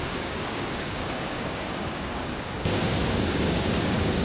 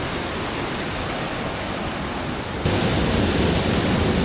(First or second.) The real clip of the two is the second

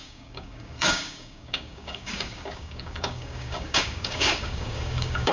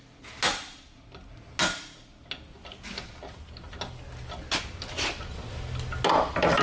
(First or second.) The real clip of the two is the second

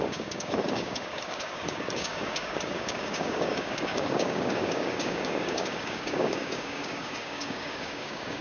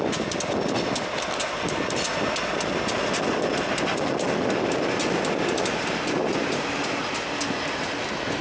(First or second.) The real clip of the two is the second